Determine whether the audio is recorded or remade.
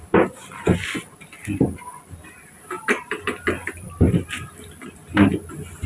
recorded